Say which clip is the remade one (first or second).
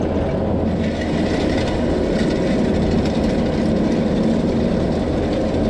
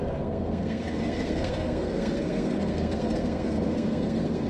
second